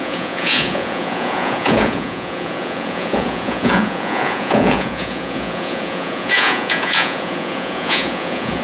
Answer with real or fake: fake